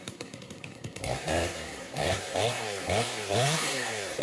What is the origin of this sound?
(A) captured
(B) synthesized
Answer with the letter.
B